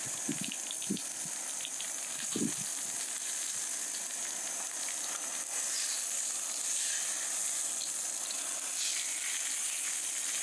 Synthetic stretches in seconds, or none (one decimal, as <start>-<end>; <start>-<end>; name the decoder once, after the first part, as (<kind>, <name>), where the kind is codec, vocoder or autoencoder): none